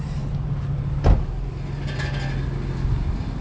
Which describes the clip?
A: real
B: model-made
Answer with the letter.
A